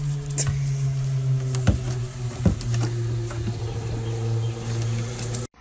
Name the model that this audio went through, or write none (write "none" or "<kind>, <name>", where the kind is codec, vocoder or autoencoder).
none